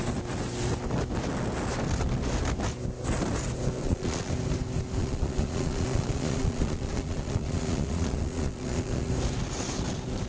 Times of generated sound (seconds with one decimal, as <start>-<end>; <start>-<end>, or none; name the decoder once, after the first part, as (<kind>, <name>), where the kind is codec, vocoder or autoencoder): 3.8-4.3 (vocoder, Vocos); 5.0-9.1